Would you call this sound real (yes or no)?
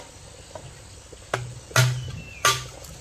yes